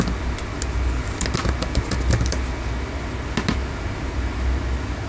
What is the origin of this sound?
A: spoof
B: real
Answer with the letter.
B